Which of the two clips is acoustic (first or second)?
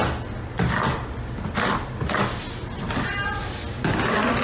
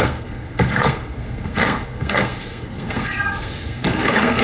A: first